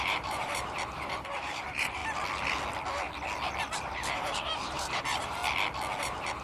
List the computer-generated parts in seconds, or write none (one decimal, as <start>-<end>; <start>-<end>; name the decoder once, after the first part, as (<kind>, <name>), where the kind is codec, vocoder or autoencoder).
0.0-2.0 (vocoder, BigVGAN v2); 3.6-5.4; 6.0-6.4